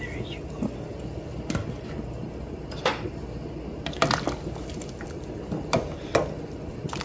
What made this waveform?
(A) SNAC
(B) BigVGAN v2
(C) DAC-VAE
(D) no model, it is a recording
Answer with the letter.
D